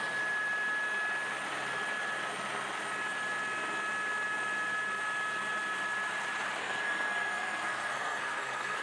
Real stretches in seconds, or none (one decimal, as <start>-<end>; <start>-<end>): 0.0-6.6